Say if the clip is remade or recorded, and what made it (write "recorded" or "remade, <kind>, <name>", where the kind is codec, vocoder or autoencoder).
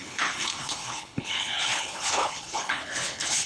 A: remade, codec, HILCodec